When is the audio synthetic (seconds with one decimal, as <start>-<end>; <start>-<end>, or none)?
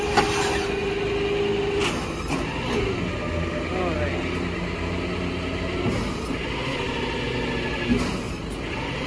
none